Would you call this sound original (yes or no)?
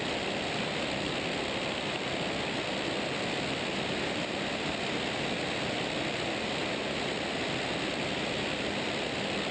yes